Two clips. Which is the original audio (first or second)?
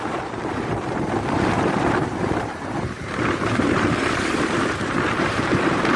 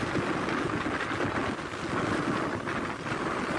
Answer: second